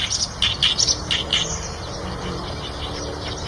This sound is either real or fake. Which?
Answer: real